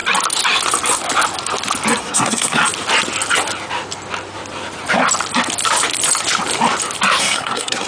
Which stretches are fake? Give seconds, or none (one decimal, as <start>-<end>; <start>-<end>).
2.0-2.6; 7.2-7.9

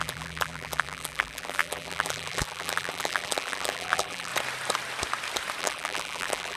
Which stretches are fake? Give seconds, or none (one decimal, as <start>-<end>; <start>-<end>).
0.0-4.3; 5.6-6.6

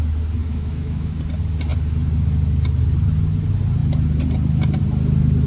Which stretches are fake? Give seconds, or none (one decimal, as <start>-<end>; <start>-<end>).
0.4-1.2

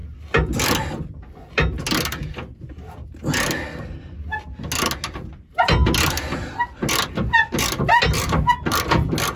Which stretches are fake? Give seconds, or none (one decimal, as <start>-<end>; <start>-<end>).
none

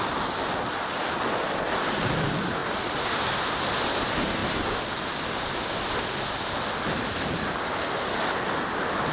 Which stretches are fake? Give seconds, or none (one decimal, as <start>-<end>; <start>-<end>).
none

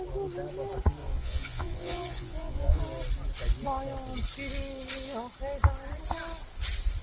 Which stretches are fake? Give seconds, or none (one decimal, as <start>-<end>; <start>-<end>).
1.0-2.8